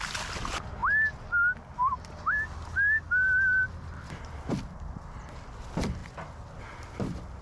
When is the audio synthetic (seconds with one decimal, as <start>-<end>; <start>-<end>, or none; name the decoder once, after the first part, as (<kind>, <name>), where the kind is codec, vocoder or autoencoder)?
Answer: none